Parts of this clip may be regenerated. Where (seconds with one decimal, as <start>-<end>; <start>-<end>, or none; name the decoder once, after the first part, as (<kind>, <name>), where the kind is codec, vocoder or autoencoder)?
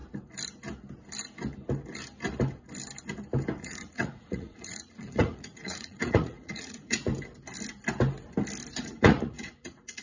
3.6-7.1 (vocoder, Vocos); 8.8-10.0